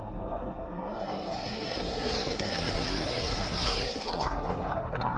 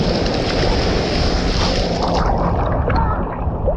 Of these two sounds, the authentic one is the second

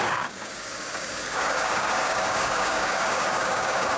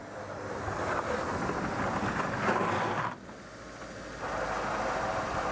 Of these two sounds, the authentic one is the second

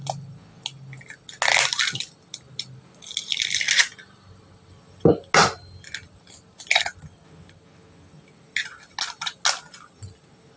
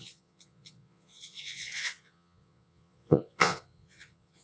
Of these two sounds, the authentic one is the first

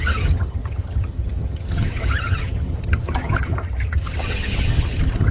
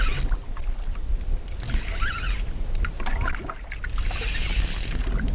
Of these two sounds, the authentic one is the second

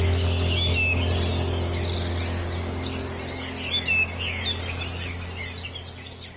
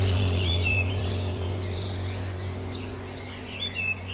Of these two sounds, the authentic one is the first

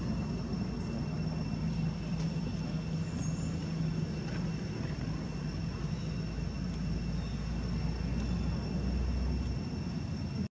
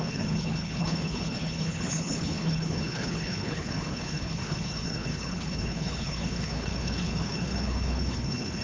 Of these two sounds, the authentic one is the first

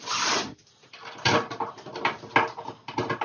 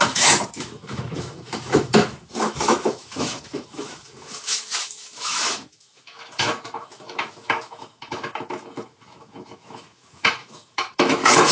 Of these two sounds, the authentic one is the first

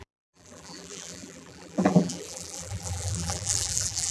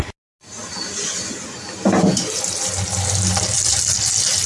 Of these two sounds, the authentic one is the second